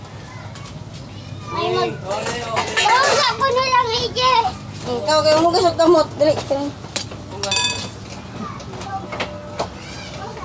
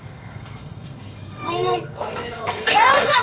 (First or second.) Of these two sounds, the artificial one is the second